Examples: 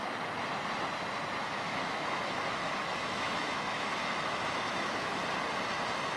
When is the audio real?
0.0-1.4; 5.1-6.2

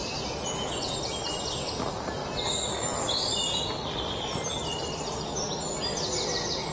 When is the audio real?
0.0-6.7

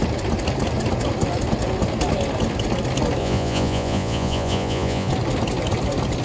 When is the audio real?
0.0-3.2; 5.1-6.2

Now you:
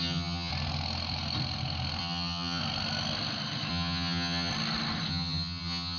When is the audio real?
0.5-2.0; 2.6-3.7; 4.5-5.1

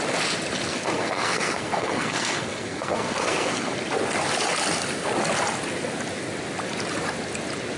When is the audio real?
0.0-0.7; 3.7-7.8

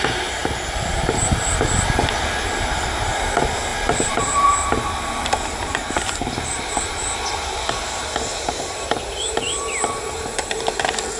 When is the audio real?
0.0-3.7; 7.7-8.3; 10.6-11.2

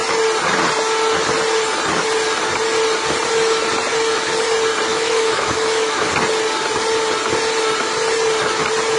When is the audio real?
0.0-4.9; 6.1-9.0